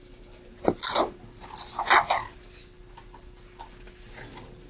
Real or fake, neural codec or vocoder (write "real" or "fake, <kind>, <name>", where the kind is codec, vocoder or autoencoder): real